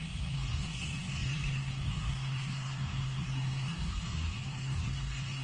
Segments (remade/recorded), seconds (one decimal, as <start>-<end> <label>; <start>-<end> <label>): 0.0-5.4 remade